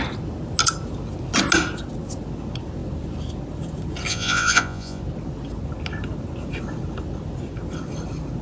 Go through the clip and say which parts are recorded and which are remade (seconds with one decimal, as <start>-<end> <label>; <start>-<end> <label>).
0.0-4.1 recorded; 4.1-5.0 remade; 5.0-8.4 recorded